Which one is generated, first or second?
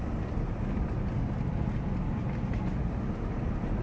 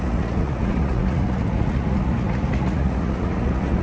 second